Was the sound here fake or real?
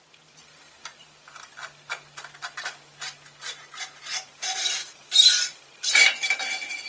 real